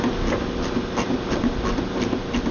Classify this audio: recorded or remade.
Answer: recorded